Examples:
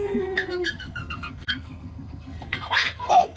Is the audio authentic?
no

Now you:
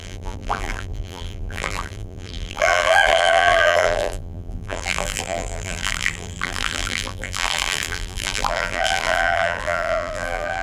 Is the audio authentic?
no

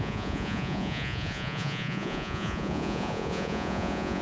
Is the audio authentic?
no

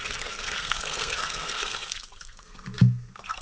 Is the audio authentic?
no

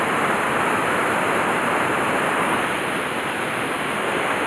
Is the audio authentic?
no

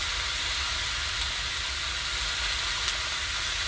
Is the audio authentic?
yes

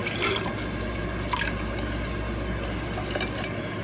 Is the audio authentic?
yes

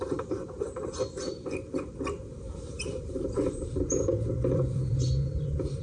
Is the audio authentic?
no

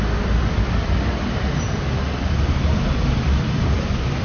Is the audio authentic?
no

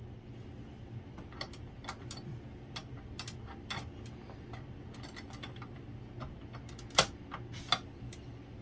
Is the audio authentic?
yes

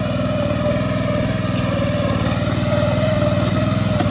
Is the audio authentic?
yes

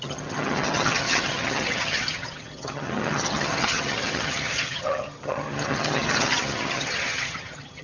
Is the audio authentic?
no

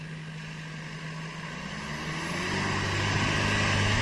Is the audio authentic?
yes